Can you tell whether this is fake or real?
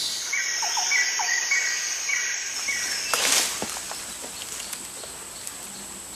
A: real